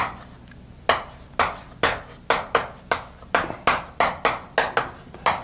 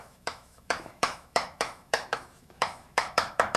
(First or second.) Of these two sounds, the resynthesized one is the second